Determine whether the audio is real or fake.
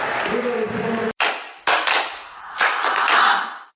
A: real